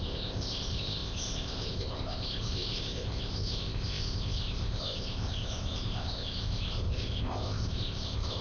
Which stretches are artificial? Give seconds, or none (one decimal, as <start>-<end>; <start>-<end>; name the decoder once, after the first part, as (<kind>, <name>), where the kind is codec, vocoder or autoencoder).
0.0-8.4 (codec, ZipCodec)